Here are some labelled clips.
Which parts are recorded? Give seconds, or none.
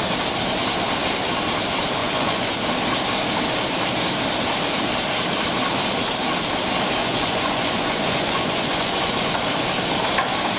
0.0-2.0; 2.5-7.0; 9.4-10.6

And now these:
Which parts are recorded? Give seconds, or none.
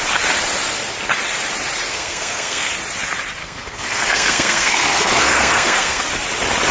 0.0-1.9; 2.7-3.4; 6.0-6.7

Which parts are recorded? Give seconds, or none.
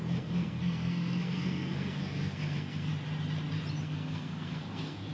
2.9-3.8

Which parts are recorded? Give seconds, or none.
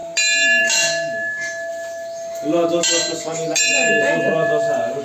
0.0-5.0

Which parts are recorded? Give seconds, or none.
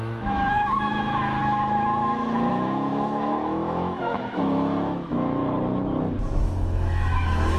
5.4-6.4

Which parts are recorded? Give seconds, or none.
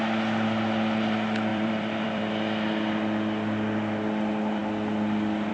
0.0-1.5; 2.3-5.5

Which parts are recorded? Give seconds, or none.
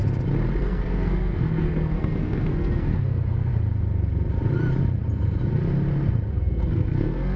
0.0-0.6; 3.5-6.3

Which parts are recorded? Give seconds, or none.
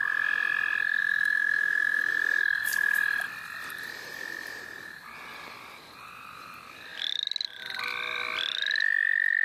0.0-1.0; 2.1-9.4